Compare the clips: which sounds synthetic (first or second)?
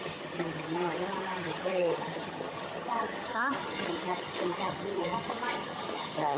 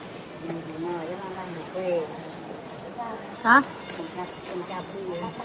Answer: first